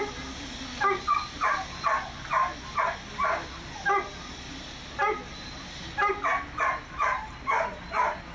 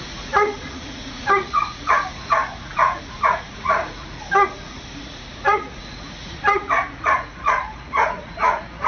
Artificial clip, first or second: second